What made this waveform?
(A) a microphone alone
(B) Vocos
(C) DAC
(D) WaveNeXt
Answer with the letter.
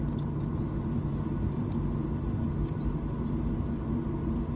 A